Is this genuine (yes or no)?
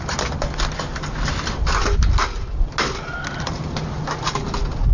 yes